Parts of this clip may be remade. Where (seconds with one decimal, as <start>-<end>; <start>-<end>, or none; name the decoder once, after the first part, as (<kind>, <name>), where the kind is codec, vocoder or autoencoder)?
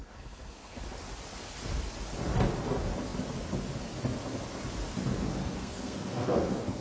0.0-0.8 (codec, SNAC); 5.4-6.8